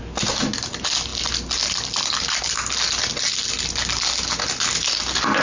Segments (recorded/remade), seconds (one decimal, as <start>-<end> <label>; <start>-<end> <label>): 0.0-5.4 recorded